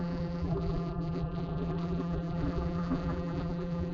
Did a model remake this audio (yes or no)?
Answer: yes